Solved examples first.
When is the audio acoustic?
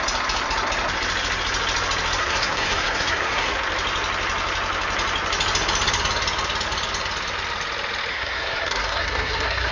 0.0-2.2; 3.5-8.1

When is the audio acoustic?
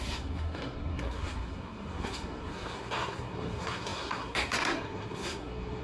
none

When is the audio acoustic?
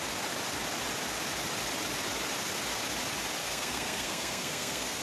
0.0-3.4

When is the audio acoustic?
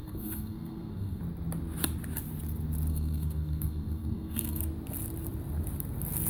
1.2-2.9; 4.6-6.3